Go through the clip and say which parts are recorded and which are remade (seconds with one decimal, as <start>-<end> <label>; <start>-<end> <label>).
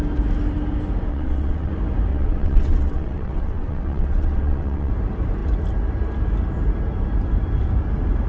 0.0-1.1 recorded; 1.1-1.7 remade; 1.7-2.1 recorded; 2.1-4.9 remade; 4.9-8.3 recorded